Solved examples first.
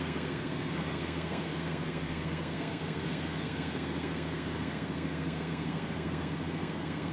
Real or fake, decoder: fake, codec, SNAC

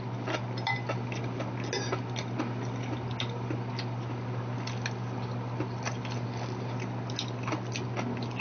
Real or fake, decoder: real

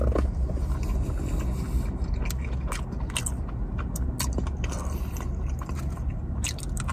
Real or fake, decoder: real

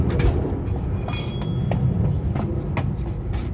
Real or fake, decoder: real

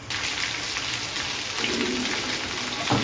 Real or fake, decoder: real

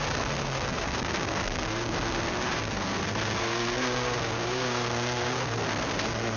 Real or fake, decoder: fake, codec, SNAC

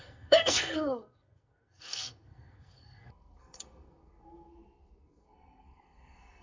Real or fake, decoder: fake, codec, SNAC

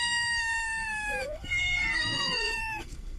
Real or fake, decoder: fake, codec, SNAC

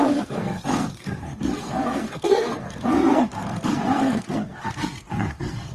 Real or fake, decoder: fake, codec, SNAC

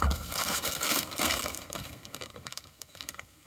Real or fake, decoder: fake, codec, SNAC